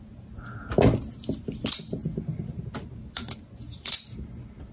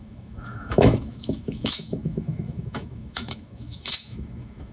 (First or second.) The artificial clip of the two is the second